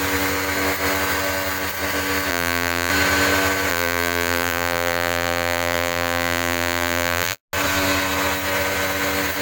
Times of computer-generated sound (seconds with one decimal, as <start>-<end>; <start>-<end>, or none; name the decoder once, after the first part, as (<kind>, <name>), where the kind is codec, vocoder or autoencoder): 2.3-2.9 (vocoder, BigVGAN v2); 3.7-7.4